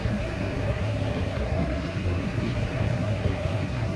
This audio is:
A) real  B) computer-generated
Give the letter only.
B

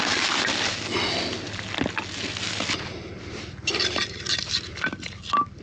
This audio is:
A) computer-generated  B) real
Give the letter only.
B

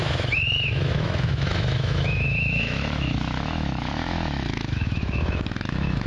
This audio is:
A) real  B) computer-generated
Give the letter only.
B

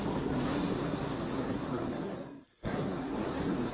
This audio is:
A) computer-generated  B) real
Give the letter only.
A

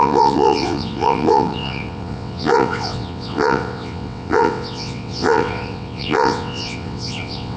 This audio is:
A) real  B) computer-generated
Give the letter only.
B